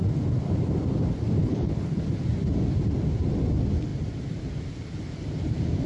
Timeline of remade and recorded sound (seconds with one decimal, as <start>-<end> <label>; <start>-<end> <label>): 0.0-1.4 recorded; 1.4-2.0 remade; 2.0-5.9 recorded